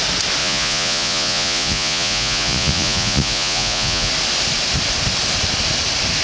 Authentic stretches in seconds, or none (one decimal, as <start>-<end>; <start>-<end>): 0.0-0.4; 4.1-6.2